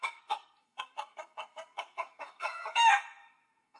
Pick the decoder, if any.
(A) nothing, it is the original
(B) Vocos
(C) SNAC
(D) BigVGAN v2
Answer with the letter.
C